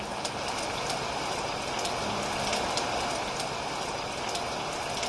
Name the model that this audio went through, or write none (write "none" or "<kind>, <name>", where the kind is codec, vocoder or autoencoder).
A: none